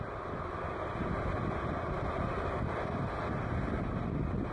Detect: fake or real real